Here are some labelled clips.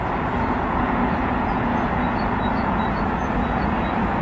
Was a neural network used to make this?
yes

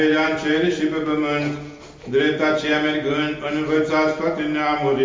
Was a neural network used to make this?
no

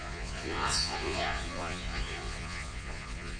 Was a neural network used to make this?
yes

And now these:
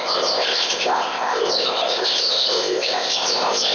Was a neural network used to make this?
yes